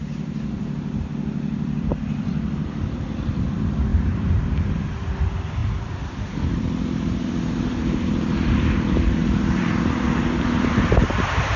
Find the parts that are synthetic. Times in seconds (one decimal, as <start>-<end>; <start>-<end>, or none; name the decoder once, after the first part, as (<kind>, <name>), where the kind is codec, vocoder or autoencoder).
3.9-4.7 (vocoder, BigVGAN v2); 5.6-9.7